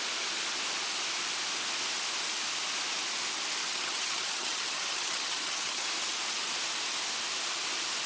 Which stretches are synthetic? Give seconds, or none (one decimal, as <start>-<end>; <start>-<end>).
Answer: 3.6-5.9